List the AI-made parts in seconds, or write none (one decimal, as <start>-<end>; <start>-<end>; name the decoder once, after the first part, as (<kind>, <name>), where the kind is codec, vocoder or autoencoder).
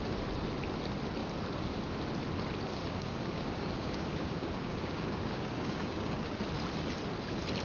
2.7-6.4 (codec, DAC)